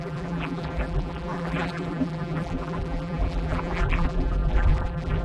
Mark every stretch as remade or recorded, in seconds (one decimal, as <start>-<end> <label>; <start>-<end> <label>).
0.0-5.2 remade